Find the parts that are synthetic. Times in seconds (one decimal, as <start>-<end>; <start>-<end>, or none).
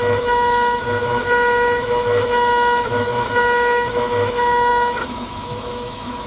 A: 0.0-6.3